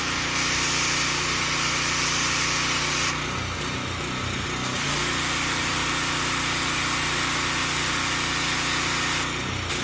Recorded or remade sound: recorded